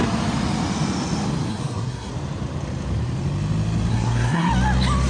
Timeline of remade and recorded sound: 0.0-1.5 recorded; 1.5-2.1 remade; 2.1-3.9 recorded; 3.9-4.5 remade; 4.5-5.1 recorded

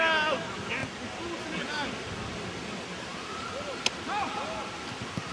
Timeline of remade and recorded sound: 0.0-5.3 recorded

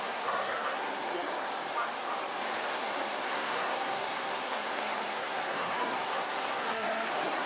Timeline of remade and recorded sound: 0.0-1.5 remade; 1.5-2.7 recorded; 2.7-7.5 remade

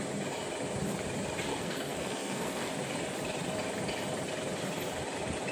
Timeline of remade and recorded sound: 0.0-1.5 recorded; 1.5-2.7 remade; 2.7-5.5 recorded

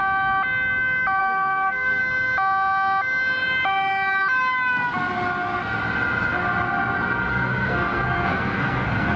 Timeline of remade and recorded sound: 0.0-1.2 recorded; 1.2-2.0 remade; 2.0-7.3 recorded; 7.3-9.2 remade

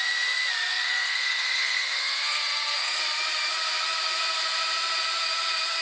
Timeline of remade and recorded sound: 0.0-0.7 recorded; 0.7-3.0 remade; 3.0-5.8 recorded